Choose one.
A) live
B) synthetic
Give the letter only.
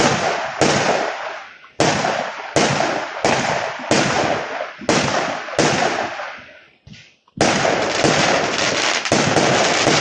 A